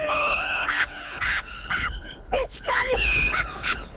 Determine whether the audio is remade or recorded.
remade